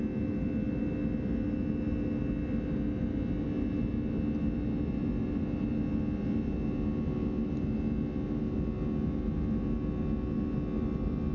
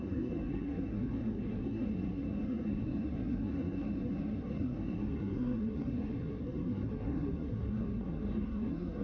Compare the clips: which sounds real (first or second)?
first